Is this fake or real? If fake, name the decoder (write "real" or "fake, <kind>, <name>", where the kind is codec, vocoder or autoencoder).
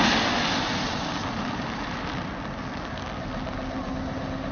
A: real